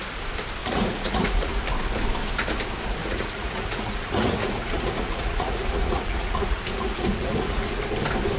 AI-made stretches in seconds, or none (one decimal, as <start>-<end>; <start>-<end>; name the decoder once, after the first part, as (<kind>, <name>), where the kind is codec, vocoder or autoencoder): 0.6-1.6 (vocoder, Vocos); 3.0-7.8